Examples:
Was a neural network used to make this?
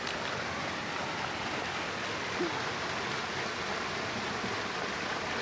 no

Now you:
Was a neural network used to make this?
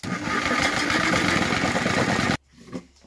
no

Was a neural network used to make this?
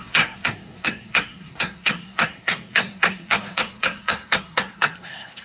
yes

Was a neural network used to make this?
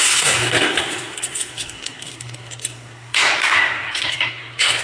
yes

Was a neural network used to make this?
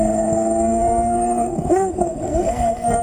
yes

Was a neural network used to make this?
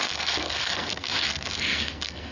yes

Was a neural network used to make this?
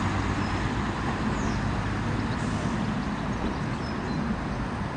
no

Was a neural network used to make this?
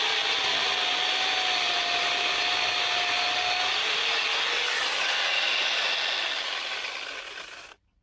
no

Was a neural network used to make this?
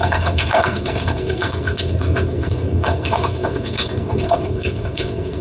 yes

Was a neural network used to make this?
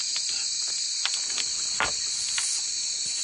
no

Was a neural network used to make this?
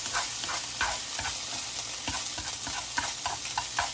no